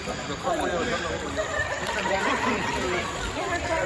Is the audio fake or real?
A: fake